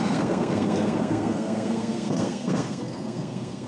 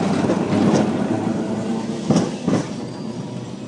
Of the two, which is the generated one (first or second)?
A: first